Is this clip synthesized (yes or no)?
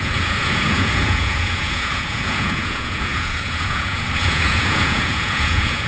yes